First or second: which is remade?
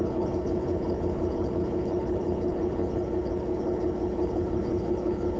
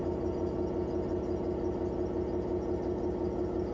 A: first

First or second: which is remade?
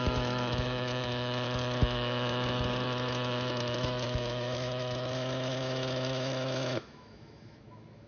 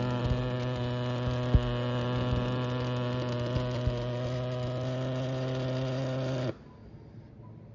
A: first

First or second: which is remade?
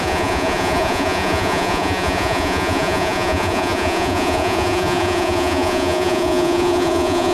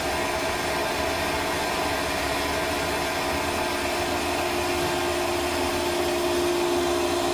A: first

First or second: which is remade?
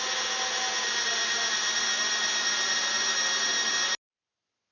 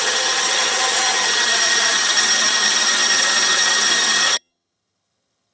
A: second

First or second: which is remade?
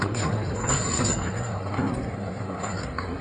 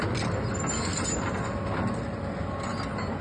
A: first